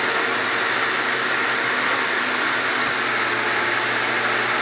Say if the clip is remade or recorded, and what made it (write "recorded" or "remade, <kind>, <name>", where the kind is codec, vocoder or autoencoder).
recorded